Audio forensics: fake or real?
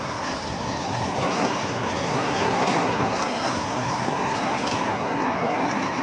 fake